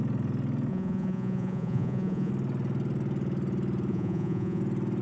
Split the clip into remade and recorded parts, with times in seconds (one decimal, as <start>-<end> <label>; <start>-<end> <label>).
0.0-0.7 recorded; 0.7-2.3 remade; 2.3-3.9 recorded; 3.9-4.6 remade; 4.6-5.0 recorded